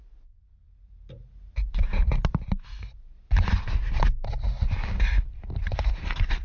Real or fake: real